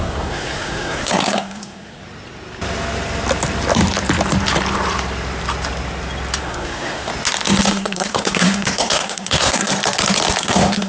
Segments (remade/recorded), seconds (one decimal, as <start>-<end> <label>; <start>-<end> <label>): 0.0-2.0 remade; 2.0-6.4 recorded; 6.4-7.1 remade; 7.1-7.7 recorded; 7.7-9.7 remade; 9.7-10.4 recorded; 10.4-10.9 remade